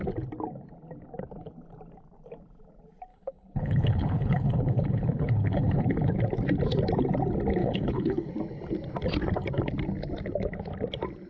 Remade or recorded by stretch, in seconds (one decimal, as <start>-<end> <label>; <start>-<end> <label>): 0.0-3.1 recorded; 3.1-6.1 remade; 6.1-7.6 recorded; 7.6-8.3 remade; 8.3-11.3 recorded